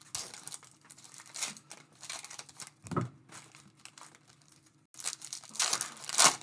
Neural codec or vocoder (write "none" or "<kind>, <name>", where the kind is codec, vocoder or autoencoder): none